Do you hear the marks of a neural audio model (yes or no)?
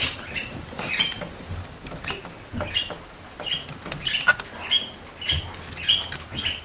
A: no